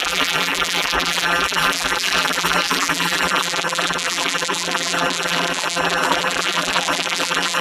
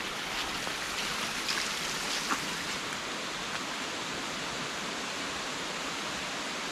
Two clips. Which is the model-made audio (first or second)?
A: first